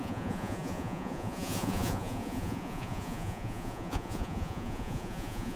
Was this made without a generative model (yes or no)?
no